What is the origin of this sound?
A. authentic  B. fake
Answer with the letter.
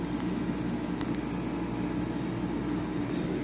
A